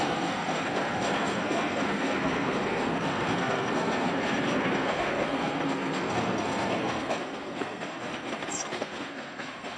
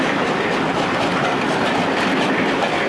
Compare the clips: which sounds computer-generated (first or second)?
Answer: first